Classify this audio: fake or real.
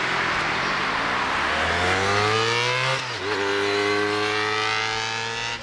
real